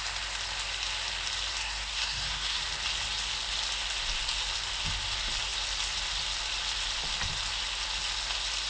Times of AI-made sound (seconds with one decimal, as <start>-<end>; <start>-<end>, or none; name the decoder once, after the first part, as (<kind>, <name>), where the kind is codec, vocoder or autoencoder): 1.6-2.6 (codec, SNAC)